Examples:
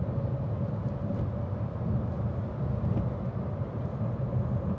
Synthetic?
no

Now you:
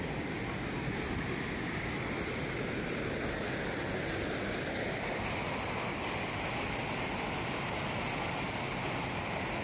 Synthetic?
no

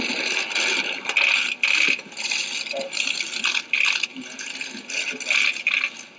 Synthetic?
no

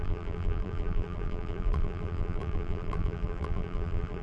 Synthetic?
yes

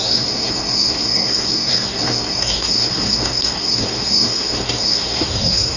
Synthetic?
yes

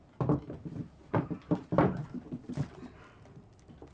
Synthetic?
no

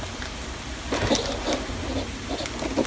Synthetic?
no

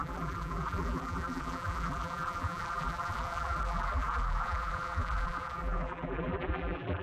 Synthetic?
yes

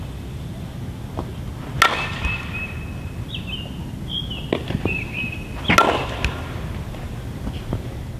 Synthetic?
no